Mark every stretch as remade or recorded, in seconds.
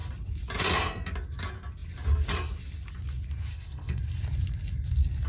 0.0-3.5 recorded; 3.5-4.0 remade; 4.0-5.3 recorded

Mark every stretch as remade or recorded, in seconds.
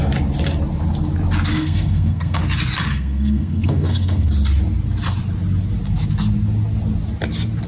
0.0-1.5 recorded; 1.5-2.4 remade; 2.4-2.8 recorded; 2.8-4.3 remade; 4.3-7.7 recorded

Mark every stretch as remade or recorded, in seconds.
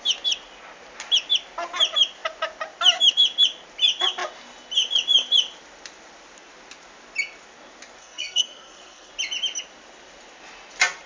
0.0-8.0 recorded; 8.0-9.1 remade; 9.1-11.1 recorded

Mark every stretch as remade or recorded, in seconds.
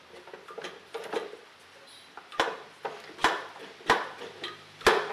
0.0-5.1 recorded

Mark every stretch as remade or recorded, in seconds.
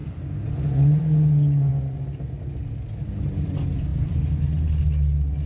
0.0-5.5 recorded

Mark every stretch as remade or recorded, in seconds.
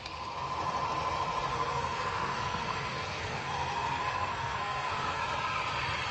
0.0-1.5 recorded; 1.5-5.2 remade; 5.2-6.1 recorded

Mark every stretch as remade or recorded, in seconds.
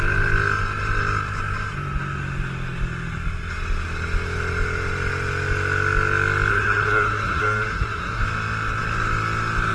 0.0-6.5 recorded; 6.5-8.2 remade; 8.2-9.7 recorded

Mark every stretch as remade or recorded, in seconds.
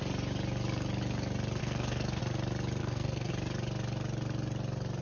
0.0-1.6 recorded; 1.6-2.2 remade; 2.2-2.8 recorded; 2.8-3.3 remade; 3.3-5.0 recorded